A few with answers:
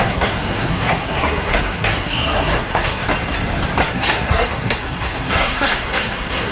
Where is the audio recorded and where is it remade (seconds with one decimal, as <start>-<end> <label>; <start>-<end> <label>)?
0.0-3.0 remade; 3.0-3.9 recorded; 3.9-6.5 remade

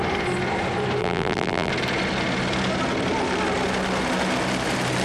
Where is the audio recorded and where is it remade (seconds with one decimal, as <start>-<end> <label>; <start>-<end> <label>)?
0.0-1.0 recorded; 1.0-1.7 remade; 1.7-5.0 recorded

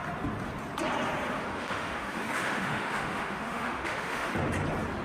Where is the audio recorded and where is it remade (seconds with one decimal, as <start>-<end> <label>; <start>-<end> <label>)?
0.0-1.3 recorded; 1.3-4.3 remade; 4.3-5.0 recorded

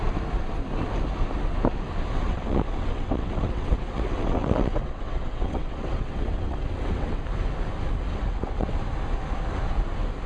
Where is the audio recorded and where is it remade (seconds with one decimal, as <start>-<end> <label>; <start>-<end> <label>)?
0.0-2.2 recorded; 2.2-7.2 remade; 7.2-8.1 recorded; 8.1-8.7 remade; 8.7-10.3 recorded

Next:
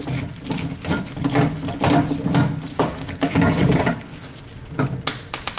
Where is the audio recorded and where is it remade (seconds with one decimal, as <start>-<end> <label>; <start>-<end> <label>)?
0.0-2.7 recorded; 2.7-4.4 remade; 4.4-5.6 recorded